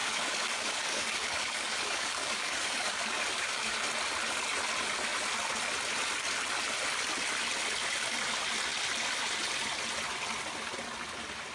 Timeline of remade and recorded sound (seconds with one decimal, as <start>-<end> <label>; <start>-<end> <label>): 0.0-3.8 remade; 3.8-11.5 recorded